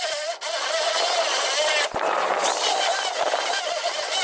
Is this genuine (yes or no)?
yes